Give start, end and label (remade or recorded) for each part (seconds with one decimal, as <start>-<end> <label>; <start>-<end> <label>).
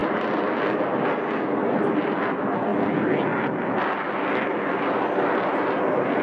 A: 0.0-0.6 remade; 0.6-1.6 recorded; 1.6-2.3 remade; 2.3-6.2 recorded